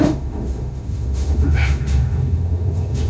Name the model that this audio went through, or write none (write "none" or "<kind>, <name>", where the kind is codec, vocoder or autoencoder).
autoencoder, DAC-VAE